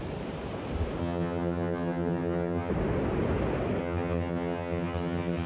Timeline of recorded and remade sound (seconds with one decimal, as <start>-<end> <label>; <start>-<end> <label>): 0.0-1.0 recorded; 1.0-2.7 remade; 2.7-3.8 recorded; 3.8-5.5 remade